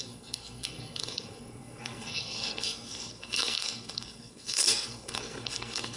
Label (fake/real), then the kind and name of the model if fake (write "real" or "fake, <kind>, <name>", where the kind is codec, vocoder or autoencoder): fake, codec, SNAC